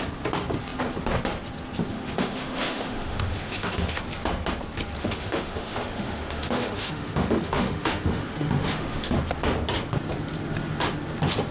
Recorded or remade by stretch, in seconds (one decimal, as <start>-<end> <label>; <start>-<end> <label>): 0.0-1.9 recorded; 1.9-4.0 remade; 4.0-5.0 recorded; 5.0-9.2 remade; 9.2-11.5 recorded